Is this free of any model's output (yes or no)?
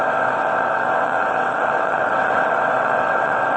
no